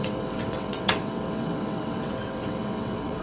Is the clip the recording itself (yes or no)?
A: no